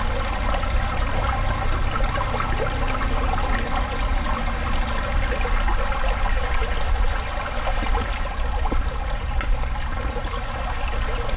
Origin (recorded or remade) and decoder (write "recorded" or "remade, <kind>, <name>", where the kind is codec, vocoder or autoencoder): recorded